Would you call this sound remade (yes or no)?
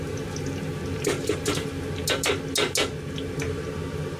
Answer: no